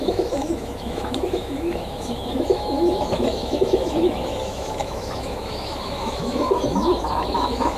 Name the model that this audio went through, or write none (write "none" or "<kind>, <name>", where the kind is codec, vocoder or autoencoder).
autoencoder, DAC-VAE